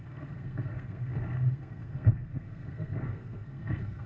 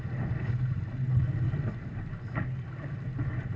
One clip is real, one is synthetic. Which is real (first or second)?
second